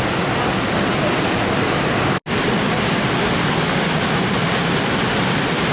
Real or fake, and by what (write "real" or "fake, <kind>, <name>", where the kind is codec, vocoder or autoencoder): real